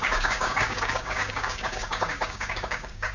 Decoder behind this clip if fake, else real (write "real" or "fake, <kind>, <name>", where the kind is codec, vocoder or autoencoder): fake, codec, DAC